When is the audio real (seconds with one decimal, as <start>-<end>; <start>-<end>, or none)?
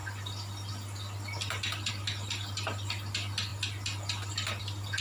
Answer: 1.9-3.5; 4.6-5.0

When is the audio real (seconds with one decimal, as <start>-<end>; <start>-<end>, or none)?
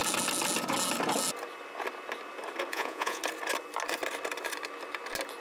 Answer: 0.0-2.7; 3.2-5.4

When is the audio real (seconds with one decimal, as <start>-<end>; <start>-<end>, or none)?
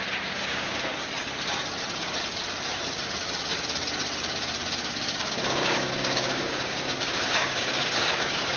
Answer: 0.9-5.2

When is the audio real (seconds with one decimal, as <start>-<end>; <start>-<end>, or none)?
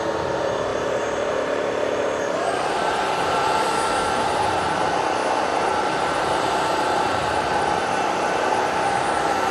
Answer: 0.0-0.7; 2.7-5.5; 8.6-9.5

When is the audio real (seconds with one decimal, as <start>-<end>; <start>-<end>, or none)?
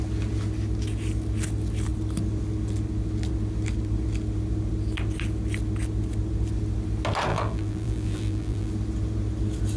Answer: 0.0-7.3; 8.7-9.8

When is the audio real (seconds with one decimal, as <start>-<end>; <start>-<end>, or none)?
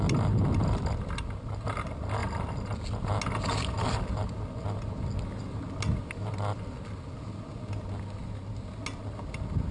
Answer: 0.0-9.7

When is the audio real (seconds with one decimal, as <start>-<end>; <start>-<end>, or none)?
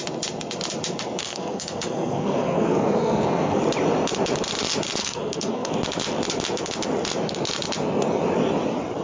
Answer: 0.0-1.2; 3.6-5.0; 5.7-9.0